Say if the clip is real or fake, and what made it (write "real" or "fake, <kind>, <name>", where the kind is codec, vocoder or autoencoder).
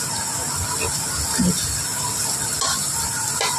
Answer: real